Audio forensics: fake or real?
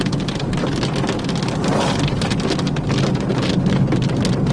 real